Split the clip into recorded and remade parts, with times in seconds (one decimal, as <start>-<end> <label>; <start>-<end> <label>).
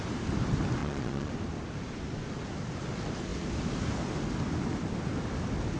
0.0-0.8 recorded; 0.8-1.3 remade; 1.3-5.8 recorded